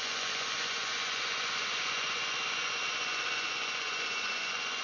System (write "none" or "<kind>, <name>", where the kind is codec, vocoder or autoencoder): vocoder, Vocos